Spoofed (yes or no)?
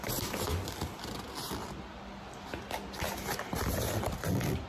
no